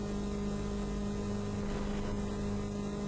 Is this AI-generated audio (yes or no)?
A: no